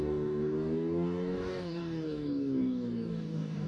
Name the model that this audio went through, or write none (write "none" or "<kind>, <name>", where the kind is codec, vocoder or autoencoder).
codec, DAC